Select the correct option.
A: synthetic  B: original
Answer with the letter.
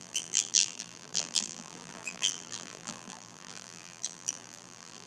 A